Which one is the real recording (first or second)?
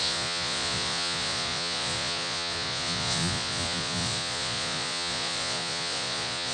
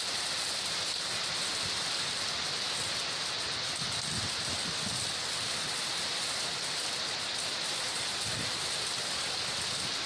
second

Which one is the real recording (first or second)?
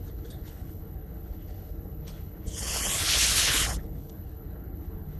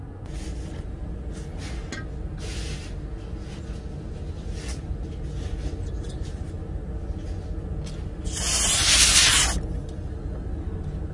second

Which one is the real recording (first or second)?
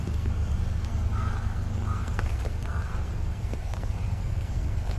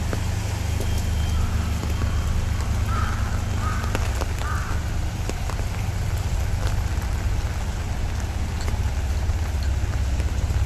second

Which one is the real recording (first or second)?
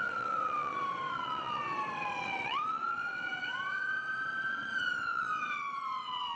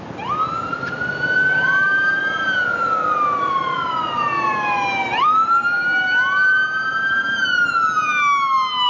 second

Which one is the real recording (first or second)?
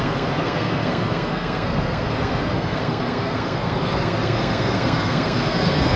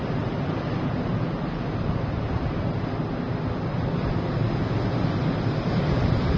second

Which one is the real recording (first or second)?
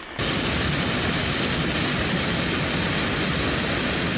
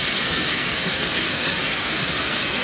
first